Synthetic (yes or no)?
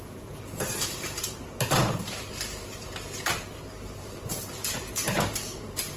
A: yes